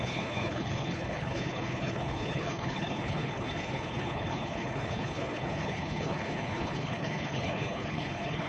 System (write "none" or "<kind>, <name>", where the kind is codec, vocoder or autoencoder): codec, HILCodec